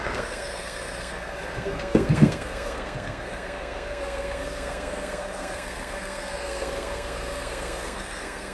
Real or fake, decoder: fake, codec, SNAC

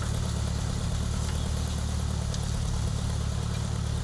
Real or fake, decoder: real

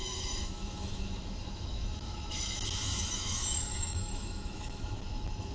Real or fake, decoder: fake, autoencoder, DAC-VAE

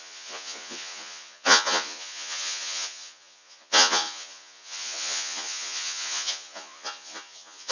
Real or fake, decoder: fake, vocoder, Vocos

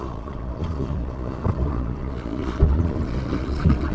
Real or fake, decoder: fake, vocoder, Vocos